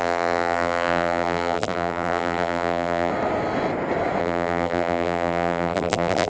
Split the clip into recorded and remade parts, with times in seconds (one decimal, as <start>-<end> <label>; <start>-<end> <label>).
0.0-3.1 remade; 3.1-4.2 recorded; 4.2-6.3 remade